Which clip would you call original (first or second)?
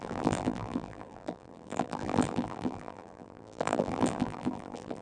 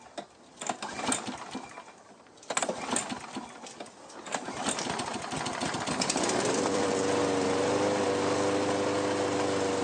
second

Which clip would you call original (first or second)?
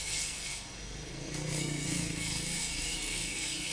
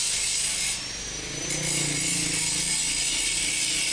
second